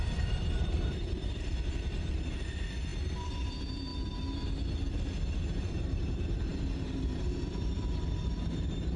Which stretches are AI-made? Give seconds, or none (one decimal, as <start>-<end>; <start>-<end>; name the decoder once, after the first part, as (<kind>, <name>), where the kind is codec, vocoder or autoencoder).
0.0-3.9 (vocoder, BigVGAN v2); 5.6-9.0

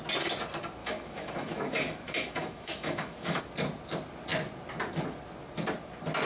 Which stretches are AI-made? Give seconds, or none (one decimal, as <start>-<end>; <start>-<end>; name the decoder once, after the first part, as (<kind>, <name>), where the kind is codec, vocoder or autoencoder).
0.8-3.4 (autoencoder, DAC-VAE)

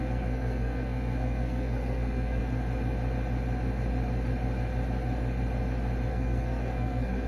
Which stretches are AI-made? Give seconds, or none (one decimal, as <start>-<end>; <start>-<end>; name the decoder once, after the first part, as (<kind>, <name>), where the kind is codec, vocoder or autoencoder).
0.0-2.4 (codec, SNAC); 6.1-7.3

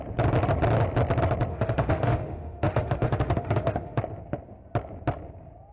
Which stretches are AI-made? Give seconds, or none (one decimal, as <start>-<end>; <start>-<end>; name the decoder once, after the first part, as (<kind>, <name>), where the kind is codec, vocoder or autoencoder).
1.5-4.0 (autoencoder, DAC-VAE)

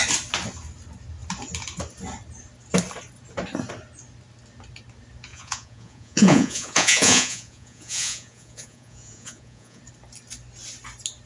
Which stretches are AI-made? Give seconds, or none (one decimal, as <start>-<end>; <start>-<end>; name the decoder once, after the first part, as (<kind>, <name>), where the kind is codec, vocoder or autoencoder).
5.3-9.8 (vocoder, Vocos)

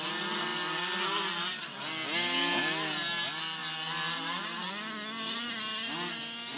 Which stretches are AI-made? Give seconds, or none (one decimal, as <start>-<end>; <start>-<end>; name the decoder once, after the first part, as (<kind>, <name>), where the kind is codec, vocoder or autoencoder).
none